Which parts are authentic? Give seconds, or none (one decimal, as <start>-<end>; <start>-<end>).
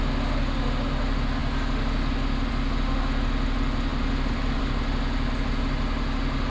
0.0-6.5